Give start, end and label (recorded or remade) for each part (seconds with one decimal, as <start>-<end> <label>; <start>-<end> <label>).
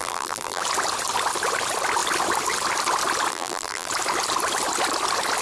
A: 0.0-0.6 remade; 0.6-3.3 recorded; 3.3-3.9 remade; 3.9-5.4 recorded